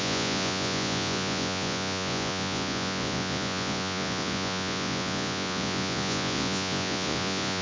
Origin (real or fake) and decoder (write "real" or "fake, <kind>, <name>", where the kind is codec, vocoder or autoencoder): fake, vocoder, Vocos